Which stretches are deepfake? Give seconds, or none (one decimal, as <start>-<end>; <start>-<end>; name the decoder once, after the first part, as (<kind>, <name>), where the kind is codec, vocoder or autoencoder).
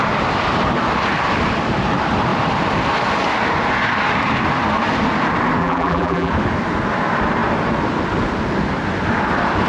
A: 5.6-6.3 (vocoder, BigVGAN v2)